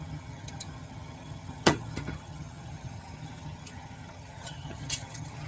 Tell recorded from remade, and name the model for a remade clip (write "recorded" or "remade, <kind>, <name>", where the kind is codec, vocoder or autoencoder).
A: remade, vocoder, HiFi-GAN